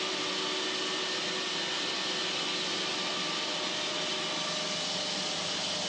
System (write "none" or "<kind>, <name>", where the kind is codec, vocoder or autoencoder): none